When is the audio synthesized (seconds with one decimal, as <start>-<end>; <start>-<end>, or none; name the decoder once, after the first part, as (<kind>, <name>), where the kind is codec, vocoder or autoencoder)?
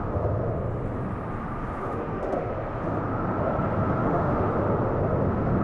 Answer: 1.8-2.5 (autoencoder, DAC-VAE); 4.0-4.5